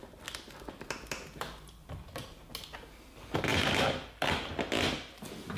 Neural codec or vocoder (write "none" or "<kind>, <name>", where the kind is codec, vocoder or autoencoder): none